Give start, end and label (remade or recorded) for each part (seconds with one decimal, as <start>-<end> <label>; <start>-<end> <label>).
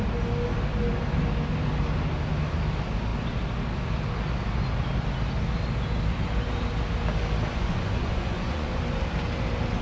0.0-7.5 recorded; 7.5-8.8 remade; 8.8-9.8 recorded